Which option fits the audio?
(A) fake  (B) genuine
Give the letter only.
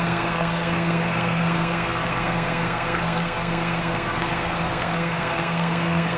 A